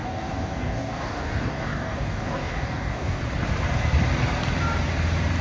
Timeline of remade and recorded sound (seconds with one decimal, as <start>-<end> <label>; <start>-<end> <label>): 0.0-3.2 remade; 3.2-5.4 recorded